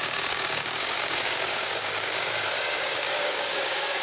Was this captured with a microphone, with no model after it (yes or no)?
no